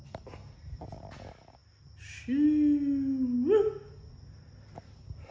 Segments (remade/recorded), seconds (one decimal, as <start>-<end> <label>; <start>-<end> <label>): 0.0-5.3 recorded